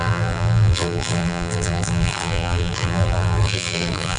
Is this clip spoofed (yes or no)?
yes